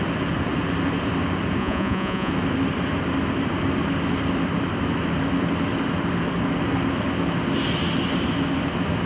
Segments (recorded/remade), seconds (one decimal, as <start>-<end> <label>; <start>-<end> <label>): 0.0-1.6 recorded; 1.6-2.3 remade; 2.3-9.1 recorded